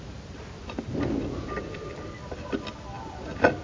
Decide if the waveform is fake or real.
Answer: real